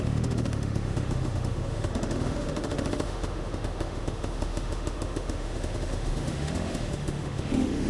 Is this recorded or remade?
remade